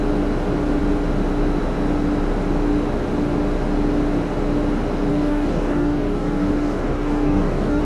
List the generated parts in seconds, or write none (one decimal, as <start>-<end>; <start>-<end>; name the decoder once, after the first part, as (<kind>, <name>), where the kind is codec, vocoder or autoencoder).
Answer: 5.1-7.8 (codec, DAC)